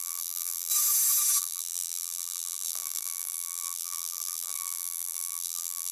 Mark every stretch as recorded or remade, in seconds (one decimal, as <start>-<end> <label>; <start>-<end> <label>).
0.0-0.7 remade; 0.7-1.4 recorded; 1.4-5.9 remade